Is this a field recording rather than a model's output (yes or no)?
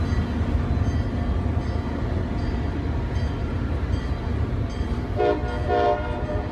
yes